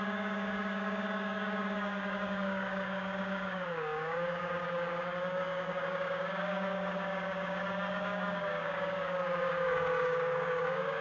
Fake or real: fake